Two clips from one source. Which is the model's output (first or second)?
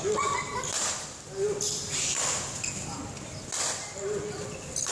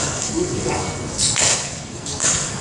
second